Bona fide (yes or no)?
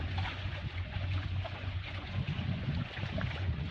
no